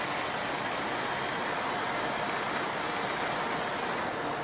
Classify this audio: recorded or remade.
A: recorded